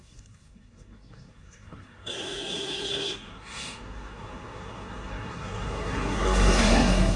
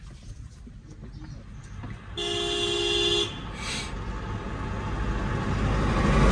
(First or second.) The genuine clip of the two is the second